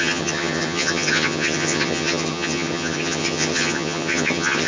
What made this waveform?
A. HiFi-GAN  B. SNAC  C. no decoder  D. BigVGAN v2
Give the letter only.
A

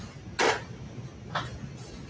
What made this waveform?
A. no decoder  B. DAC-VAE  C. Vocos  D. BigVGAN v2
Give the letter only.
A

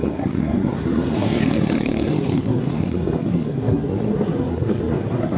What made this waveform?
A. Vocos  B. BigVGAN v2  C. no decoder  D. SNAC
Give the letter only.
D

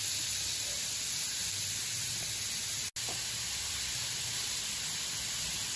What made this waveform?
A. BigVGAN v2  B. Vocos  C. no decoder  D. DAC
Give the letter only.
C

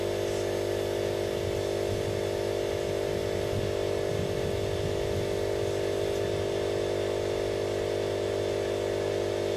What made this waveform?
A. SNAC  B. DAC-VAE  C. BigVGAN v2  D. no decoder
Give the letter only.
D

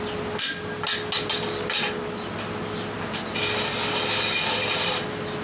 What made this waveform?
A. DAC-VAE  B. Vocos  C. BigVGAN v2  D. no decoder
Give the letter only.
D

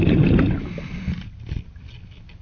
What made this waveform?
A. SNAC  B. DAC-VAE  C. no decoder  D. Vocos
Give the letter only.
C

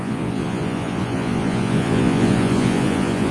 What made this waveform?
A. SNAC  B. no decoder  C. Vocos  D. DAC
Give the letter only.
C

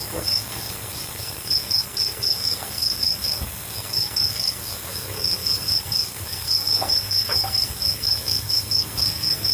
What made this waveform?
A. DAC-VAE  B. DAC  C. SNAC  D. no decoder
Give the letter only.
C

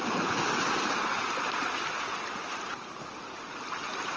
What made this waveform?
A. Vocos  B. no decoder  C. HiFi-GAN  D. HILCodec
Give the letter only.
B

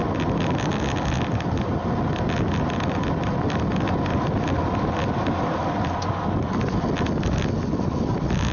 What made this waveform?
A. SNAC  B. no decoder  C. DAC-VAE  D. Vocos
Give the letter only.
B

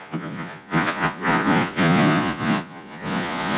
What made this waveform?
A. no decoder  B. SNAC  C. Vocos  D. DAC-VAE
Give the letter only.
C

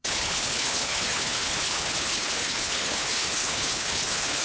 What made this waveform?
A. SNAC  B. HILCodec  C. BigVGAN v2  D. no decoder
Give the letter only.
B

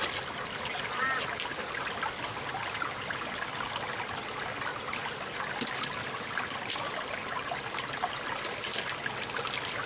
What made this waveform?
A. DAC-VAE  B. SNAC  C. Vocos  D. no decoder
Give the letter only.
D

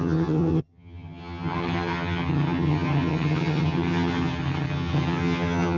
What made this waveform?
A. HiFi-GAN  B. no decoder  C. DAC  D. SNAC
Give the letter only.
A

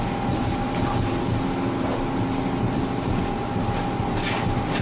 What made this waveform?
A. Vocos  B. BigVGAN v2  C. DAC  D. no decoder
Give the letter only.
D